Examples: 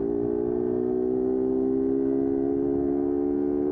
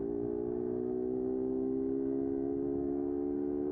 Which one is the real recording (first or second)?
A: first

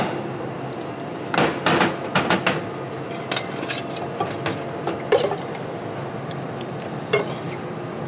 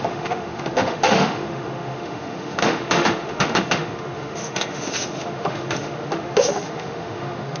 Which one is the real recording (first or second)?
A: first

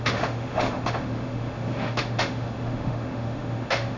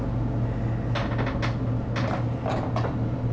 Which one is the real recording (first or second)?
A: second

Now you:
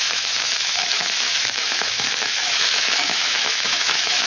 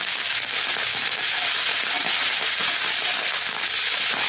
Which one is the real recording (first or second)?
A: second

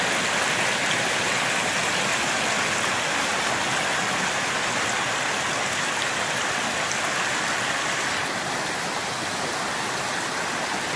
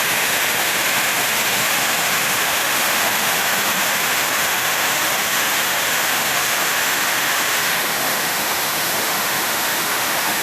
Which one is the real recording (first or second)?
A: first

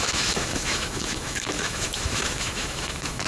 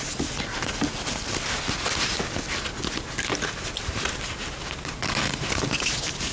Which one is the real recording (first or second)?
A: second